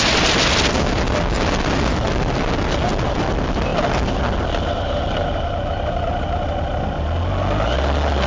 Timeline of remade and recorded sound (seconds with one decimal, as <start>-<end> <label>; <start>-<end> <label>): 0.0-8.3 recorded